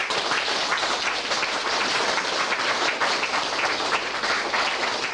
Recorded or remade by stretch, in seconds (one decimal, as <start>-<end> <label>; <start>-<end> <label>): 0.0-1.6 recorded; 1.6-2.2 remade; 2.2-5.1 recorded